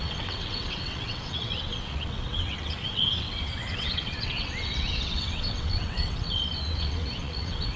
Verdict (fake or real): fake